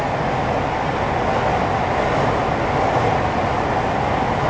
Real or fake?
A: real